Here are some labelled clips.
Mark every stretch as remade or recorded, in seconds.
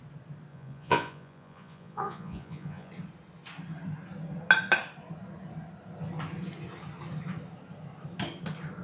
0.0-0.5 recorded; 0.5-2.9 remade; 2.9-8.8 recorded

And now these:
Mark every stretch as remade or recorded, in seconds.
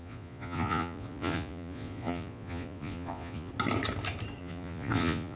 0.0-3.5 remade; 3.5-4.4 recorded; 4.4-5.4 remade